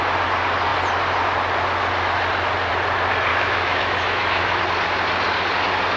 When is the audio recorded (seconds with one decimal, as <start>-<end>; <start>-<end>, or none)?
0.0-3.3; 4.6-6.0